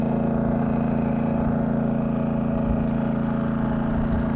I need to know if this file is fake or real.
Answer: real